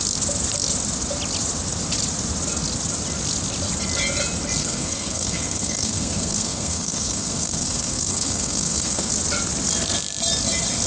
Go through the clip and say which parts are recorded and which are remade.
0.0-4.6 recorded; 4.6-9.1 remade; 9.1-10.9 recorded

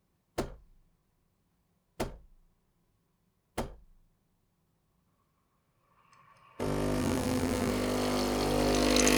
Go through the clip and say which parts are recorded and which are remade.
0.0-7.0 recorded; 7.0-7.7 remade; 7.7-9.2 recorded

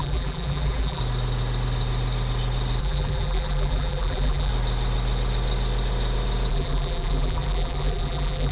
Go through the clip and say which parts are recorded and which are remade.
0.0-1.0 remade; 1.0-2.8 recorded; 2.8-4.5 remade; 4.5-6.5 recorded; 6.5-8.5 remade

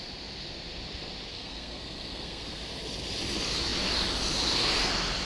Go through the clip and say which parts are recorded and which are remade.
0.0-1.3 recorded; 1.3-2.6 remade; 2.6-5.2 recorded

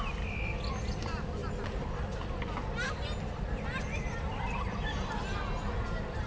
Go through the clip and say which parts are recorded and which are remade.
0.0-6.3 recorded